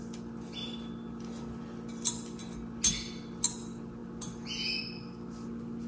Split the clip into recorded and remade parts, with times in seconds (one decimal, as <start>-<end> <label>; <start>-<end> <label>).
0.0-5.9 recorded